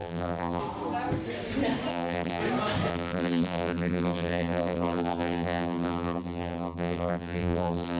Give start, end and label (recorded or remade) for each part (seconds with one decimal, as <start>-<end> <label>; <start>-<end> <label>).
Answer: 0.0-0.6 remade; 0.6-1.9 recorded; 1.9-2.4 remade; 2.4-2.9 recorded; 2.9-8.0 remade